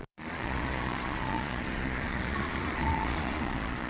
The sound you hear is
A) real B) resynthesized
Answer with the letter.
B